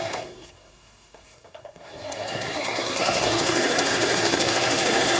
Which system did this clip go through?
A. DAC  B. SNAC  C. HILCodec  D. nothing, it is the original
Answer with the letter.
B